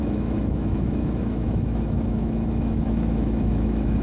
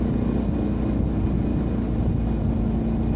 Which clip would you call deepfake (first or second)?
first